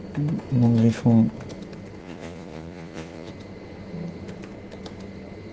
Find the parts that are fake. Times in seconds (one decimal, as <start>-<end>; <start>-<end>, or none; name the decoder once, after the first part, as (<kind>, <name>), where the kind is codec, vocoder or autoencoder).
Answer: 2.0-3.3 (vocoder, Vocos)